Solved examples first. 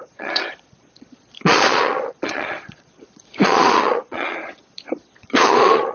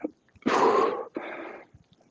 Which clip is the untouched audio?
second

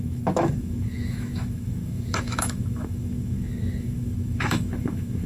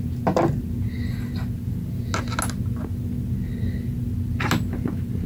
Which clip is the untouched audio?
second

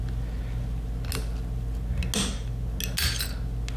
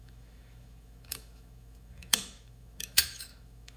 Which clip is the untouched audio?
first